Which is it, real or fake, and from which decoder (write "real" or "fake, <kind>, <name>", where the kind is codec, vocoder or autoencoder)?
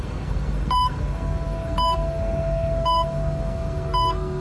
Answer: fake, codec, SNAC